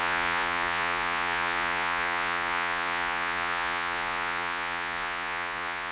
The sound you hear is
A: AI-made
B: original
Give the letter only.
A